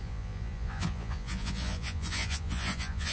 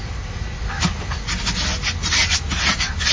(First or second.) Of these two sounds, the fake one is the first